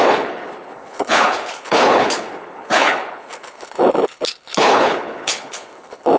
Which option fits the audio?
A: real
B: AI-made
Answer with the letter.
B